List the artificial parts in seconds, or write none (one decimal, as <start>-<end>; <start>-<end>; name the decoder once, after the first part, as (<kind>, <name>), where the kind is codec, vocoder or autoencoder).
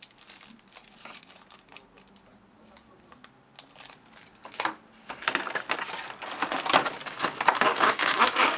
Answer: 7.7-8.6 (codec, DAC)